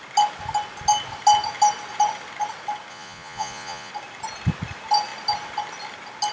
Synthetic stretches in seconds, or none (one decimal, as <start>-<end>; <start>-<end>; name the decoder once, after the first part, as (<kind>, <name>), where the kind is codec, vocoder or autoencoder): 2.9-3.9 (vocoder, Vocos)